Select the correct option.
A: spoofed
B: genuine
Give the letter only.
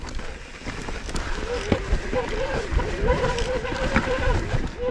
B